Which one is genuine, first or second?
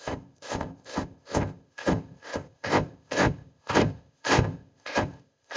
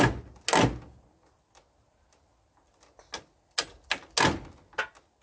second